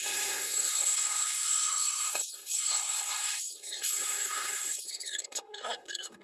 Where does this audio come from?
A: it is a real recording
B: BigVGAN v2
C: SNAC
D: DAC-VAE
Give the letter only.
C